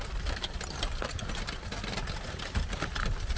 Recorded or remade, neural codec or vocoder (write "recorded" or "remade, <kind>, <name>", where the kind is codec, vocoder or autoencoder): recorded